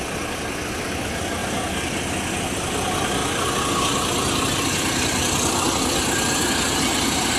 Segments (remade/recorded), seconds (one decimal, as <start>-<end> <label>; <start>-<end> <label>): 0.0-3.2 recorded; 3.2-6.3 remade; 6.3-7.4 recorded